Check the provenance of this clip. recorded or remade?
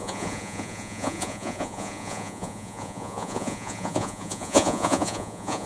remade